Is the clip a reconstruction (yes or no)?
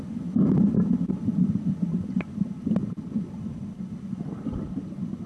no